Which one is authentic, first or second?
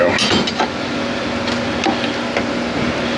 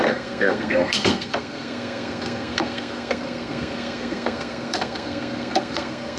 first